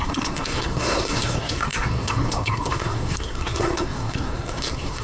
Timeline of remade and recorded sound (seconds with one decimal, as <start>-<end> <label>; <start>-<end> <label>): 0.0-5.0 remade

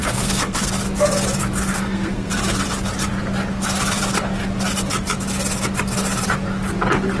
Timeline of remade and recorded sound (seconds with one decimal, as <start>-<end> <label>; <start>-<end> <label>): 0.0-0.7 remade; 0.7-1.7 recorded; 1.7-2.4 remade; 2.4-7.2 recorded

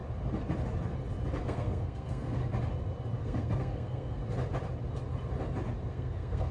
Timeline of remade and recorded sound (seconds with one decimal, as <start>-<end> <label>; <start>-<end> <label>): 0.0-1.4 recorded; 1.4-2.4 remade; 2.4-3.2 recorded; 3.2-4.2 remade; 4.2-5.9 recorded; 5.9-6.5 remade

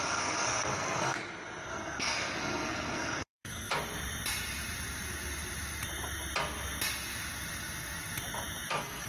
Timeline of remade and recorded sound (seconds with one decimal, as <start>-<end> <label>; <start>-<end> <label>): 0.0-1.2 remade; 1.2-1.7 recorded; 1.7-3.7 remade; 3.7-8.7 recorded; 8.7-9.1 remade

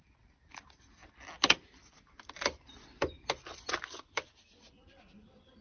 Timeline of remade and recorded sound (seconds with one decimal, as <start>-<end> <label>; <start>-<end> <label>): 0.0-5.6 recorded

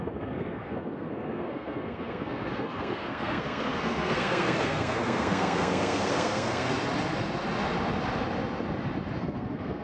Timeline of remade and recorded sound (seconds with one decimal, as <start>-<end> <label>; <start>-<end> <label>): 0.0-6.7 remade; 6.7-9.2 recorded; 9.2-9.8 remade